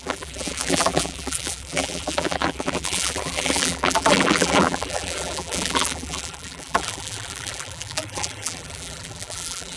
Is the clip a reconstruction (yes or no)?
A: yes